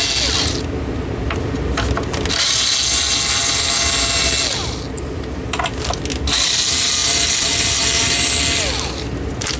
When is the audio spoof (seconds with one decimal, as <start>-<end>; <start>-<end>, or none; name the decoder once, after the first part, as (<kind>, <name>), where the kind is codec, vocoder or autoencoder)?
none